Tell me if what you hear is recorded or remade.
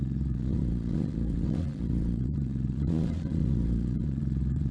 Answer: remade